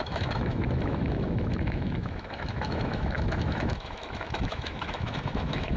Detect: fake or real fake